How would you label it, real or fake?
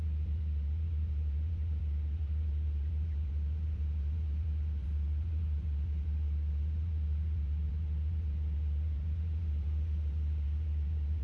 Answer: fake